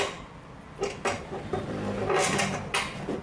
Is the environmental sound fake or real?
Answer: real